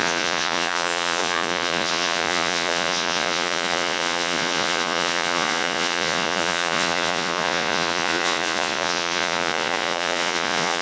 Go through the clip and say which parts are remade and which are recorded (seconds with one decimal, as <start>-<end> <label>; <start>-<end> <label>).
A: 0.0-10.8 remade